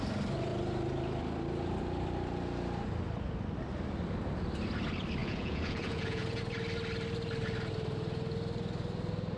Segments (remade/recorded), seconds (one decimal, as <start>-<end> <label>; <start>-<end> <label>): 0.0-5.2 recorded; 5.2-6.4 remade; 6.4-9.4 recorded